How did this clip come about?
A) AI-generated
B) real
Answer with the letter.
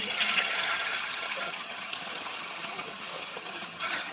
A